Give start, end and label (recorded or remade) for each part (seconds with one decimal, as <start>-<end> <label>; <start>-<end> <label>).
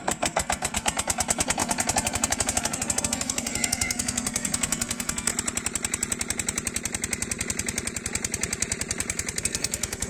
0.0-5.3 remade; 5.3-9.4 recorded; 9.4-10.1 remade